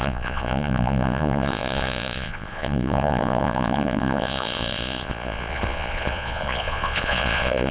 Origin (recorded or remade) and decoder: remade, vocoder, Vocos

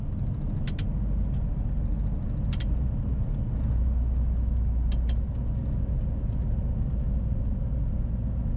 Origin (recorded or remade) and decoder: recorded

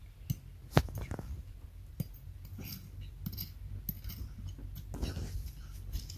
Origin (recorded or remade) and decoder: recorded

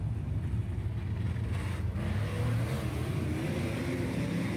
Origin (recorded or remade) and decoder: recorded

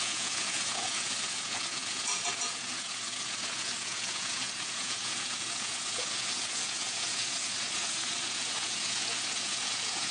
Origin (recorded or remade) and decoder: remade, vocoder, Vocos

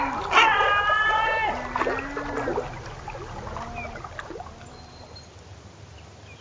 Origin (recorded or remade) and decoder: recorded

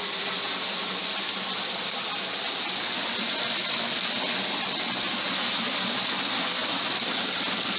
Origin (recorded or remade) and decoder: recorded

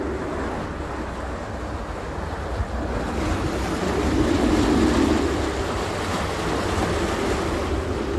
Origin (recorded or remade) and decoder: recorded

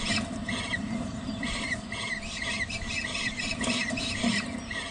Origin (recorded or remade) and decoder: remade, vocoder, BigVGAN v2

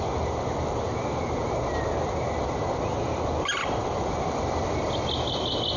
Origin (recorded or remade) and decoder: recorded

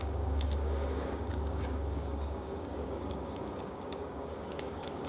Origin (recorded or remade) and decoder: remade, codec, DAC